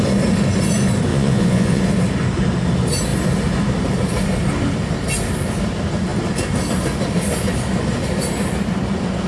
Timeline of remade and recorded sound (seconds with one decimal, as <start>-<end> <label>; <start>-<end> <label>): 0.0-1.1 recorded; 1.1-1.8 remade; 1.8-9.3 recorded